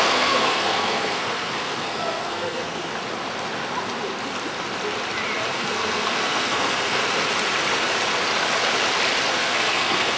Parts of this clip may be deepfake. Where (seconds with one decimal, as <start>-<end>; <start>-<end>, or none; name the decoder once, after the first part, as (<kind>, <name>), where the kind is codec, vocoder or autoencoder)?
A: 0.0-2.9 (codec, SNAC); 5.5-7.0; 9.3-10.2